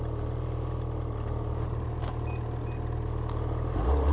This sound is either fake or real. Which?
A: real